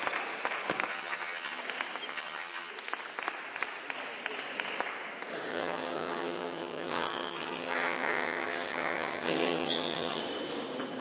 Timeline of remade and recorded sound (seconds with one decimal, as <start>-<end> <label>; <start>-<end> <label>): 0.0-0.9 recorded; 0.9-1.6 remade; 1.6-2.1 recorded; 2.1-2.7 remade; 2.7-5.5 recorded; 5.5-10.2 remade; 10.2-11.0 recorded